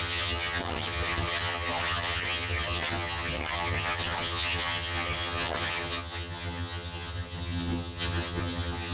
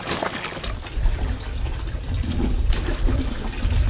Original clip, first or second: second